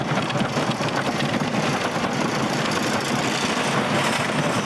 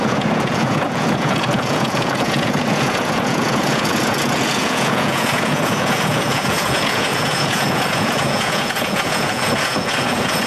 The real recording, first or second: first